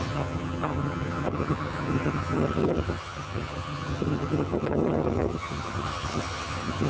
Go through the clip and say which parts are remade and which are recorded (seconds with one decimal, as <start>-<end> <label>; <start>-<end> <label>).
0.0-6.9 remade